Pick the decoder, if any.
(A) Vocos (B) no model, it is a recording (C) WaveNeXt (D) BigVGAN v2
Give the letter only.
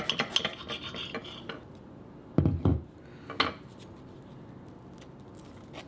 B